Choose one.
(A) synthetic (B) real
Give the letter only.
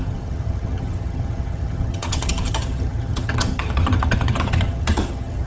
A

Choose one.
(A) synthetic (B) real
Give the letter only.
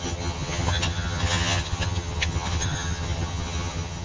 A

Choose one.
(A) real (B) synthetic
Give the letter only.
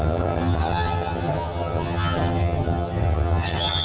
B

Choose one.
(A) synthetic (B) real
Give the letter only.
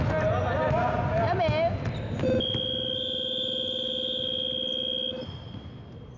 B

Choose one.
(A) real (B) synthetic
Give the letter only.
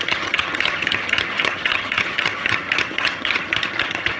B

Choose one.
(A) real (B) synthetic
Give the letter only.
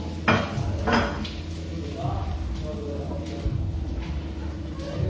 A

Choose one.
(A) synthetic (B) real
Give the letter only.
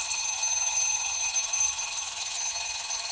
A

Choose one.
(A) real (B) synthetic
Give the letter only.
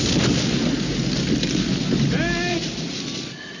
A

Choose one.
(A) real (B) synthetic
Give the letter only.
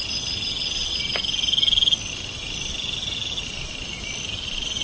A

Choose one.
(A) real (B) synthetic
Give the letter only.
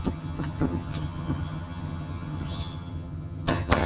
B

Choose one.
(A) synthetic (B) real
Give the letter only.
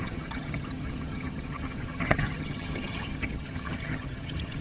A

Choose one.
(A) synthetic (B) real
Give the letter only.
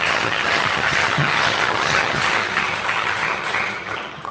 A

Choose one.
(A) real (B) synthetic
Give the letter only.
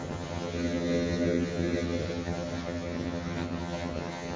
B